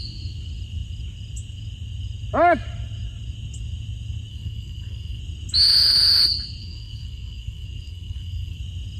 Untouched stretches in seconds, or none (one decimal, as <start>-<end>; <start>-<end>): 0.0-4.3; 5.2-6.6; 8.6-9.0